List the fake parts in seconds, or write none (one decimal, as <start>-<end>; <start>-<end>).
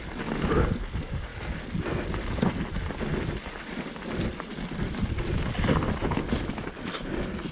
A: none